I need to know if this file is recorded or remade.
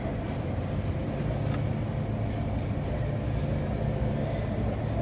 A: recorded